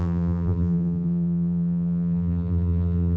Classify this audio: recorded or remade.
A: remade